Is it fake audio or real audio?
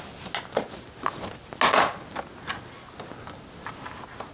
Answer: real